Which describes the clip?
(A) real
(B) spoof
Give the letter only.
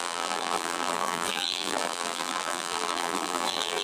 B